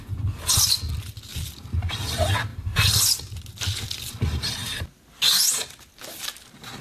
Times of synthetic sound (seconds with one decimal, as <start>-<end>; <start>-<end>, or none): none